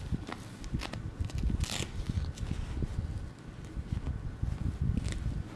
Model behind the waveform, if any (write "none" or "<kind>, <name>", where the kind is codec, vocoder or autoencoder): none